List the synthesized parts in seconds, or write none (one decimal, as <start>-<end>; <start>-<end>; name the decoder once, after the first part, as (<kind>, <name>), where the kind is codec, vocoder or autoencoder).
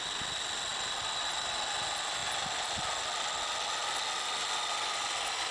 none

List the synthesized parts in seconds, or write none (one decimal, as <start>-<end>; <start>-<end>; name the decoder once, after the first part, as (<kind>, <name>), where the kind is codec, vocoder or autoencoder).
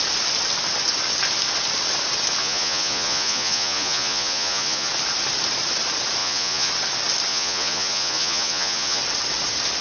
2.4-4.9 (vocoder, Vocos); 6.2-6.7; 7.3-9.0